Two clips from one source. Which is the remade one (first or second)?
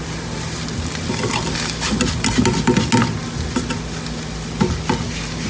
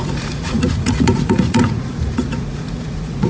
second